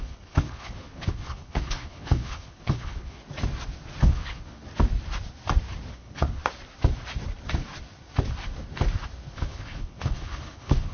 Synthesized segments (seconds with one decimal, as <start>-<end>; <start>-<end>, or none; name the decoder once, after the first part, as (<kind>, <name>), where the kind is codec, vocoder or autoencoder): 0.0-3.2 (codec, HILCodec); 4.0-4.6; 5.9-6.4; 9.3-10.9